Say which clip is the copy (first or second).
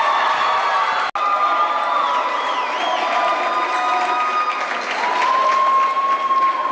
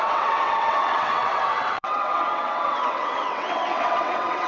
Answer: second